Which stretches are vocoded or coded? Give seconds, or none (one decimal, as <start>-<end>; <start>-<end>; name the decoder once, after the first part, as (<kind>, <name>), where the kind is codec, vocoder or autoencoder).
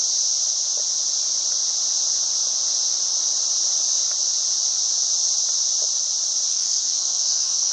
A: 6.5-7.7 (codec, SNAC)